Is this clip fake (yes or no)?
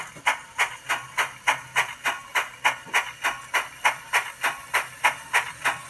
no